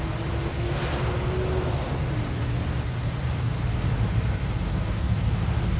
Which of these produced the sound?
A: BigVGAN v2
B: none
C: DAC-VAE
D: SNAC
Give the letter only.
B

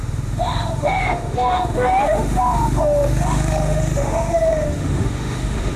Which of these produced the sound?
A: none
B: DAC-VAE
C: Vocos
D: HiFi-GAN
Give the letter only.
B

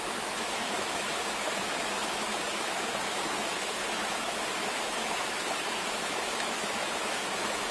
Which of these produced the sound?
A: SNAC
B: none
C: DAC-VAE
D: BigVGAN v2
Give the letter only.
C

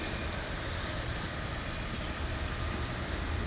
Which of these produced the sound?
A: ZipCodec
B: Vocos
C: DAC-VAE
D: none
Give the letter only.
D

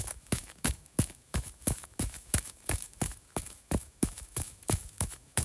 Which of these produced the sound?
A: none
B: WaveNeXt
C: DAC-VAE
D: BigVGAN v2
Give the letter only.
C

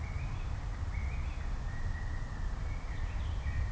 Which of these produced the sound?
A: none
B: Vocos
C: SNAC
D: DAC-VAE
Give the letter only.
A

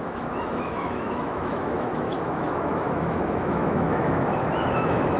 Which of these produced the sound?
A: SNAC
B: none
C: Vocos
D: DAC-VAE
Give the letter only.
D